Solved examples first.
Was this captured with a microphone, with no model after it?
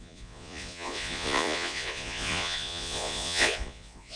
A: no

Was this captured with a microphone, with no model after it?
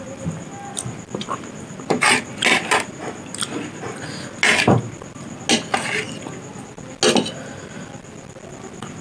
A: yes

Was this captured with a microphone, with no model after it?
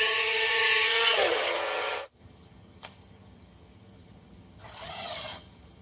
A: no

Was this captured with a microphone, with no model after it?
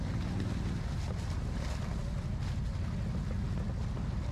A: yes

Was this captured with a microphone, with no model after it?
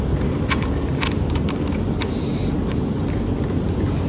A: yes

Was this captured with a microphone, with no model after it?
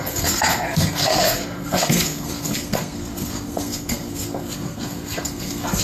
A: no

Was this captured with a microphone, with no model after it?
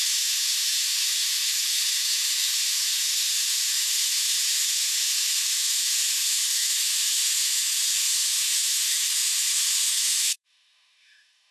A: no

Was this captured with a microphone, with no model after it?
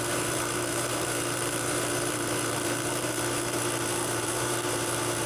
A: no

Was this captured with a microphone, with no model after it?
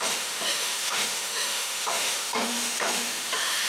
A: no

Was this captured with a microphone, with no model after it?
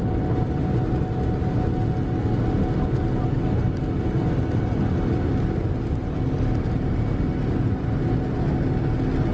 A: yes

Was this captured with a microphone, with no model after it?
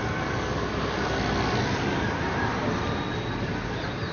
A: yes